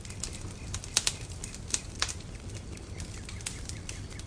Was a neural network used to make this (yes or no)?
no